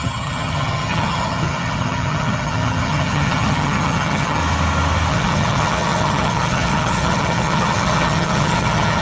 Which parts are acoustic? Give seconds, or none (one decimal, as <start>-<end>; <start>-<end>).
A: 4.4-5.1